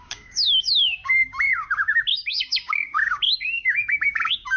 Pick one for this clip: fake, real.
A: fake